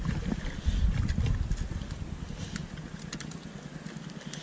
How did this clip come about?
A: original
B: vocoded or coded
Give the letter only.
A